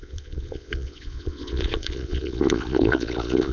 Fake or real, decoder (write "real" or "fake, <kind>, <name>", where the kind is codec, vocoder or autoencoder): fake, vocoder, Vocos